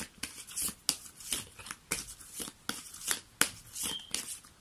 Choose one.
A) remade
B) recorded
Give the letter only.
B